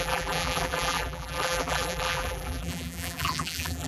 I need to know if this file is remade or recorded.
remade